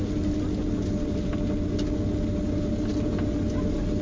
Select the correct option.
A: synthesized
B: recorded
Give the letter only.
B